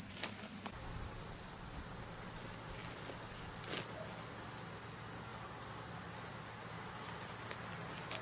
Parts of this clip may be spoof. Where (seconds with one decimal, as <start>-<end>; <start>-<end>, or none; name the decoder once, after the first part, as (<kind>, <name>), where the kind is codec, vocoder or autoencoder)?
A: none